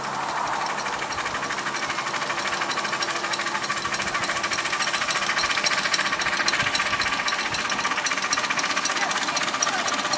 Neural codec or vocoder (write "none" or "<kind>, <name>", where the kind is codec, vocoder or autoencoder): none